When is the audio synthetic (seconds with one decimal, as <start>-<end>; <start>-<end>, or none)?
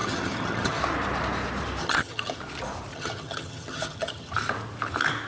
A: 0.0-0.8; 1.8-2.4; 2.9-4.3